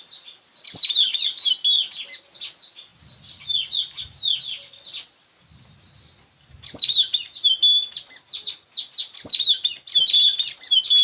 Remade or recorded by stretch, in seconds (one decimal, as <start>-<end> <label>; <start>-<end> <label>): 0.0-11.0 recorded